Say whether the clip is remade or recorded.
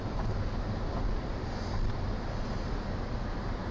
recorded